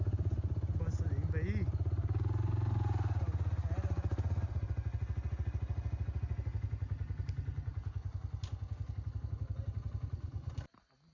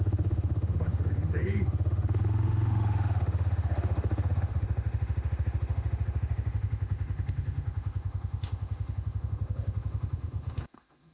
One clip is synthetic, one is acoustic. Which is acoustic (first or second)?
first